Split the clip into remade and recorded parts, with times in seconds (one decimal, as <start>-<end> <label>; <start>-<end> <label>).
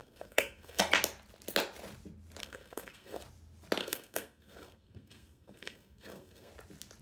0.0-0.8 remade; 0.8-2.4 recorded; 2.4-3.2 remade; 3.2-3.8 recorded; 3.8-6.5 remade; 6.5-7.0 recorded